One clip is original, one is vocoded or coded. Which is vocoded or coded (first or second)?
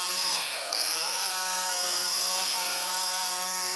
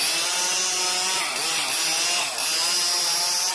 first